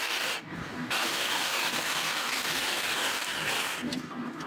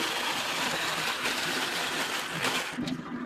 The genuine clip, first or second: second